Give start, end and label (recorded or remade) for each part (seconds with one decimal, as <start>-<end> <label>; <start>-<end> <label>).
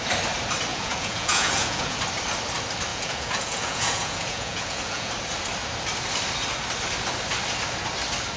0.0-0.7 recorded; 0.7-2.0 remade; 2.0-2.9 recorded; 2.9-5.1 remade; 5.1-8.4 recorded